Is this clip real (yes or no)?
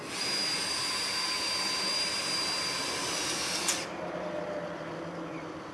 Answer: yes